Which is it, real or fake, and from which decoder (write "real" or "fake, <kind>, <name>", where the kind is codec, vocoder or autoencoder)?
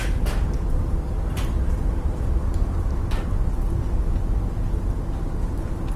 real